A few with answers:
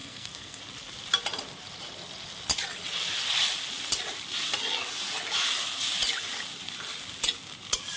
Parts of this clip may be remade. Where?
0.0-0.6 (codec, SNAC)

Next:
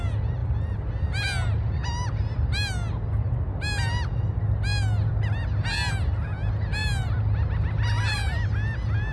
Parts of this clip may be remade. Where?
none

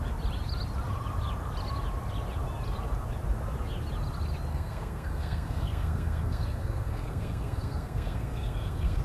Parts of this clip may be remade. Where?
4.5-9.0 (codec, SNAC)

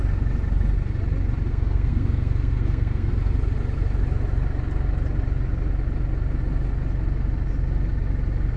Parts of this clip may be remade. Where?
1.5-3.1 (codec, SNAC)

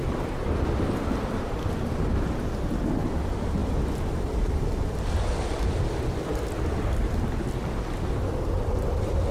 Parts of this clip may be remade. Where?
none

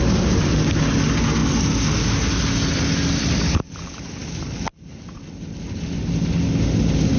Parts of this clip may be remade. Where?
none

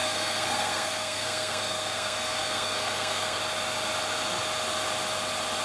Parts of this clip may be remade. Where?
0.0-3.4 (codec, SNAC)

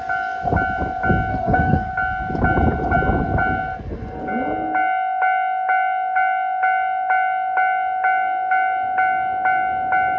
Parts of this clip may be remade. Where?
1.3-1.9 (codec, SNAC)